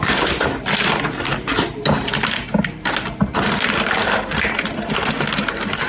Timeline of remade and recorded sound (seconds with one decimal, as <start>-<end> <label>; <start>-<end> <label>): 0.0-5.9 recorded